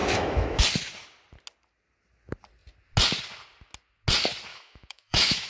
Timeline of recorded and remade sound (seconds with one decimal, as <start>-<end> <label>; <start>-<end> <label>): 0.0-0.6 remade; 0.6-4.5 recorded; 4.5-5.5 remade